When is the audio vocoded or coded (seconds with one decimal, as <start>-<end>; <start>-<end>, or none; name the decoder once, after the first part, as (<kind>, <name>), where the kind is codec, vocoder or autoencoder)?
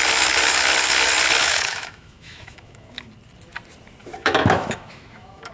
1.4-3.1 (autoencoder, DAC-VAE); 4.0-5.5